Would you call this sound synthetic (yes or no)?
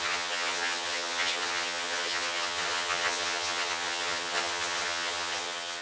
yes